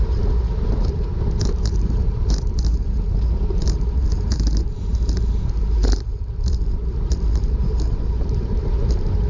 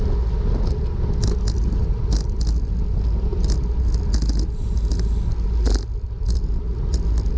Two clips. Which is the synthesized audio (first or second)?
first